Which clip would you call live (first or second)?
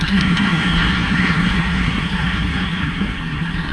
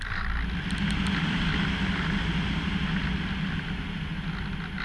second